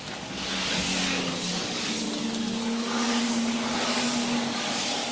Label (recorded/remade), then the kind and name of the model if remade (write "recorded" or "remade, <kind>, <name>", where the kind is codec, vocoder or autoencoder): remade, codec, DAC